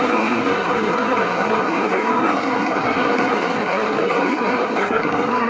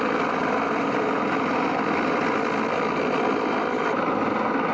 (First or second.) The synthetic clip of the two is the first